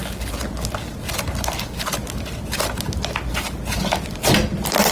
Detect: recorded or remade recorded